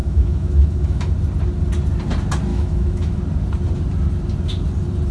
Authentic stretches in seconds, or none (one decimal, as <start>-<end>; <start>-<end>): 1.1-2.5; 3.2-5.1